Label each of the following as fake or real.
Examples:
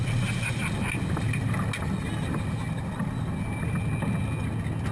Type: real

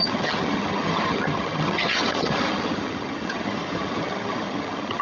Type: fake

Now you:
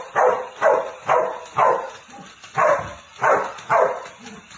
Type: real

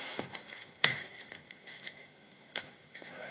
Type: fake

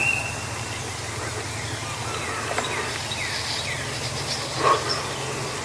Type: real